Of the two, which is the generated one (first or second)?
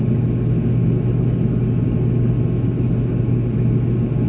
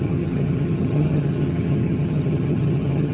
second